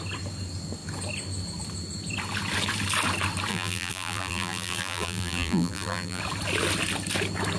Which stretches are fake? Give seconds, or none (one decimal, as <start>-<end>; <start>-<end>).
3.5-6.2